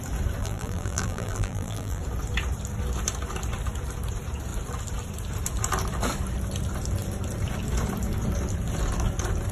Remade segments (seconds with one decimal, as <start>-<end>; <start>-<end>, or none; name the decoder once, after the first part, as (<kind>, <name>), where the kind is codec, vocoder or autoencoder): 0.4-2.0 (vocoder, BigVGAN v2)